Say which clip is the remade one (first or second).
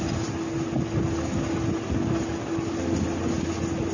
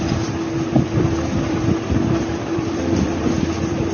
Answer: second